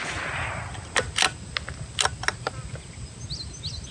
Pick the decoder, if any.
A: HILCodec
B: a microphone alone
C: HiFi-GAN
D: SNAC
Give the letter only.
B